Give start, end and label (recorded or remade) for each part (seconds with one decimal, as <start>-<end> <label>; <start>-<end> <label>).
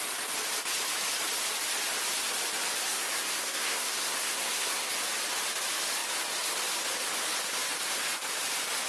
0.0-2.9 recorded; 2.9-4.9 remade; 4.9-8.9 recorded